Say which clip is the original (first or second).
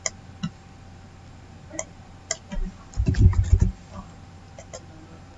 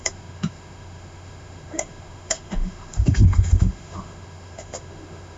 first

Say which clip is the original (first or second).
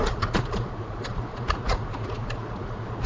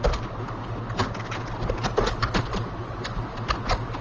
second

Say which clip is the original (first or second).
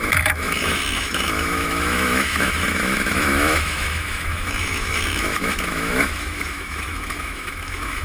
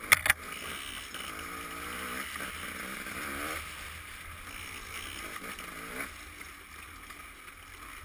second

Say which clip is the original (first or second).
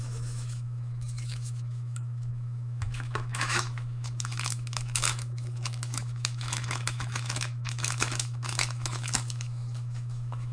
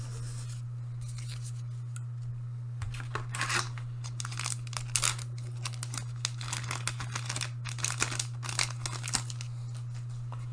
second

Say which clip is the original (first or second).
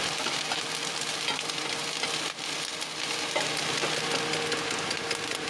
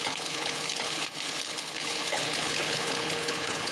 first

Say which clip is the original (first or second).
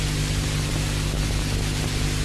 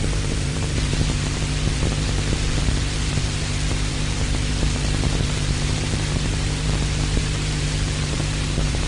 first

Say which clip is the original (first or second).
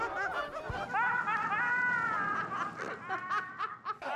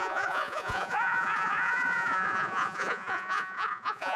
first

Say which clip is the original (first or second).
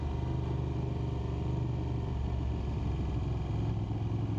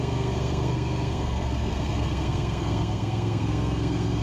first